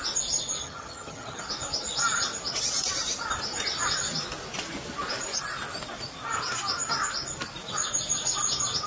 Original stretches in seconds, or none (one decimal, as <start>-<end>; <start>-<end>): 0.0-0.6; 1.4-8.9